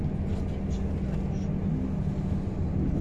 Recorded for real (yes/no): yes